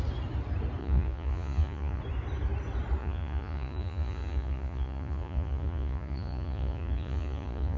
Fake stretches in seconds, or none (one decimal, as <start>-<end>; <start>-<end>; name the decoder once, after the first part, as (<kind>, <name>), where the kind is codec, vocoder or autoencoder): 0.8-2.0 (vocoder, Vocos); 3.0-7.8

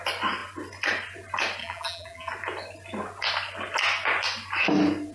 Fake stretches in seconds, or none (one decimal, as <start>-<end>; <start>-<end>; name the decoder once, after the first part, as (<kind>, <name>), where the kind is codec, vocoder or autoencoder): 1.6-2.3 (vocoder, BigVGAN v2)

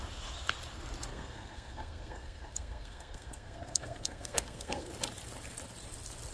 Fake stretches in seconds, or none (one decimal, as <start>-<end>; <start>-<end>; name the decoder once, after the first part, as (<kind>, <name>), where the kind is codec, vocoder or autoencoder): 1.1-4.9 (codec, SNAC)